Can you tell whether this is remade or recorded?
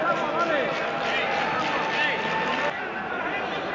recorded